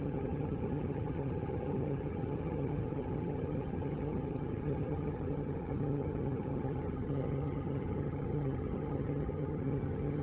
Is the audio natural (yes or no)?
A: no